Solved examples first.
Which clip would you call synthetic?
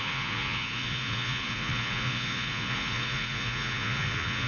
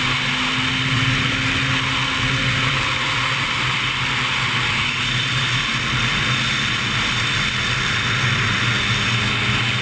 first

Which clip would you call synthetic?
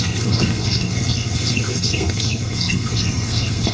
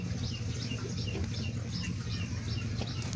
first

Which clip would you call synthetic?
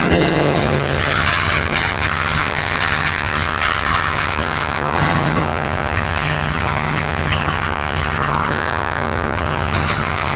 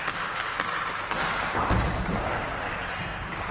first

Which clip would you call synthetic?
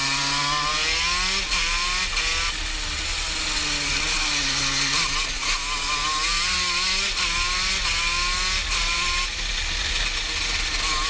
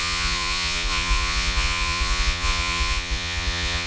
second